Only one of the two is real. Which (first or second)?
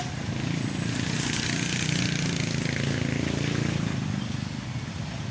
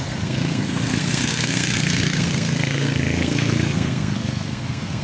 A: first